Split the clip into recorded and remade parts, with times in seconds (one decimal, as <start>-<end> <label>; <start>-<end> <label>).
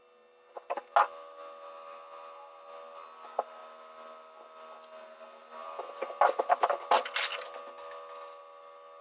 0.0-9.0 recorded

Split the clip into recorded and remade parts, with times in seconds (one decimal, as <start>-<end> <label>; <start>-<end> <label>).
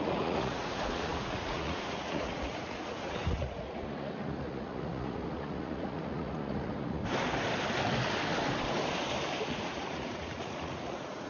0.0-7.0 remade; 7.0-9.5 recorded; 9.5-11.3 remade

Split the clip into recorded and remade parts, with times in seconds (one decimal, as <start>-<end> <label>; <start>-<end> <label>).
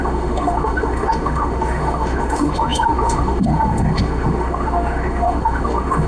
0.0-6.1 remade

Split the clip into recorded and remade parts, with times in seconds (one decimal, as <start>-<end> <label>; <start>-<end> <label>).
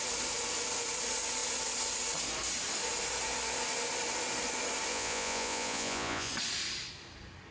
0.0-4.9 recorded; 4.9-6.3 remade; 6.3-7.5 recorded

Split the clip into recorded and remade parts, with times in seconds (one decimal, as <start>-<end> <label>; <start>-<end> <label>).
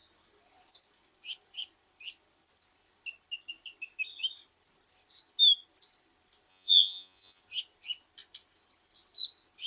0.0-6.5 recorded; 6.5-7.4 remade; 7.4-9.7 recorded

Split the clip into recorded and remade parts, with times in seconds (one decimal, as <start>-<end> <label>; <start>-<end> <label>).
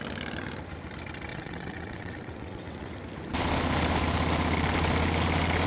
0.0-1.3 recorded; 1.3-2.9 remade; 2.9-5.7 recorded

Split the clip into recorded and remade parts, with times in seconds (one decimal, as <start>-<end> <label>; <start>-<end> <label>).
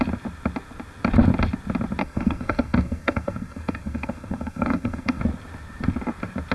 0.0-2.0 recorded; 2.0-5.2 remade; 5.2-6.5 recorded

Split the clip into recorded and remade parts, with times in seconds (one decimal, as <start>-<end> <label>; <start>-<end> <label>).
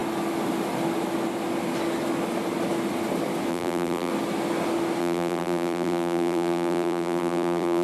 0.0-3.5 recorded; 3.5-4.1 remade; 4.1-5.0 recorded; 5.0-7.8 remade